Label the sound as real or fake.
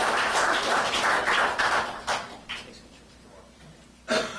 fake